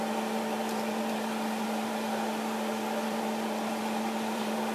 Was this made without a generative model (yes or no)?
no